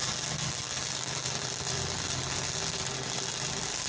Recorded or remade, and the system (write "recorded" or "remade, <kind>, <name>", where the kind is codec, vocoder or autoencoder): recorded